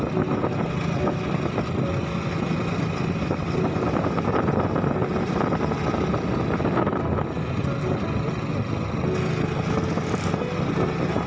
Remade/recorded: recorded